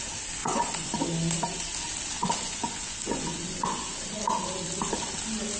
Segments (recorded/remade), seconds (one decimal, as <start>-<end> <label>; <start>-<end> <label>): 0.0-0.4 recorded; 0.4-1.0 remade; 1.0-2.2 recorded; 2.2-4.2 remade; 4.2-5.6 recorded

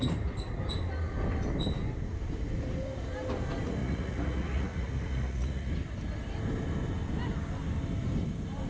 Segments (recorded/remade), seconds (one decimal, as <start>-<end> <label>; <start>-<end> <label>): 0.0-3.8 recorded; 3.8-5.7 remade; 5.7-8.7 recorded

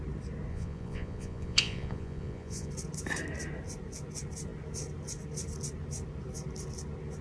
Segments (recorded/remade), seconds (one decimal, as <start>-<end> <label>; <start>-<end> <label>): 0.0-0.5 recorded; 0.5-2.7 remade; 2.7-7.2 recorded

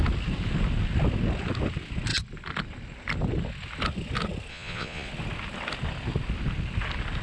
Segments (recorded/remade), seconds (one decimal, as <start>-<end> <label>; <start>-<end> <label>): 0.0-4.5 recorded; 4.5-5.1 remade; 5.1-7.2 recorded

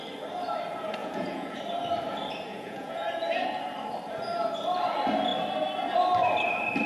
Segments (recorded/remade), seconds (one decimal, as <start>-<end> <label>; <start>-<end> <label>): 0.0-1.0 recorded; 1.0-1.6 remade; 1.6-2.5 recorded; 2.5-3.4 remade; 3.4-6.9 recorded

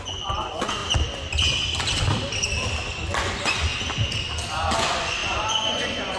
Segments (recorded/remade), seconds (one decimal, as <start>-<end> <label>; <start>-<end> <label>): 0.0-0.8 remade; 0.8-3.2 recorded; 3.2-3.7 remade; 3.7-4.8 recorded; 4.8-6.2 remade

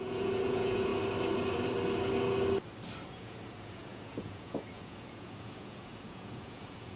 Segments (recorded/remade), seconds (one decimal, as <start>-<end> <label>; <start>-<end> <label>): 0.0-0.9 remade; 0.9-3.1 recorded; 3.1-7.0 remade

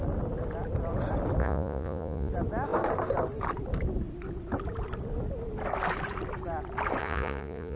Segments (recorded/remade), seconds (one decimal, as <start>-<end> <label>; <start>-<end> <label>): 0.0-1.4 recorded; 1.4-2.3 remade; 2.3-7.0 recorded; 7.0-7.8 remade